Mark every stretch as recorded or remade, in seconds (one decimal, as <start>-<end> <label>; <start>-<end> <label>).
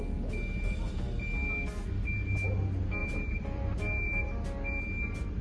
0.0-3.0 recorded; 3.0-4.2 remade; 4.2-5.4 recorded